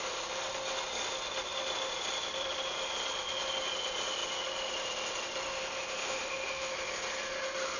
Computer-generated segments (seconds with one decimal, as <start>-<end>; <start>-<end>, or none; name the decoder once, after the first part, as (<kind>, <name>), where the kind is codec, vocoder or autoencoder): 6.0-6.7 (autoencoder, DAC-VAE)